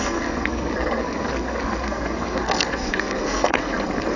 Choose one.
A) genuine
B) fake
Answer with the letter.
B